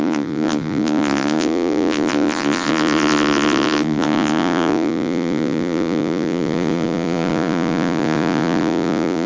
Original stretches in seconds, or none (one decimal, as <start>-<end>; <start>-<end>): none